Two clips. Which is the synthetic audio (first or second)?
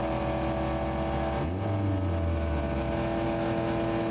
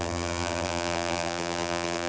second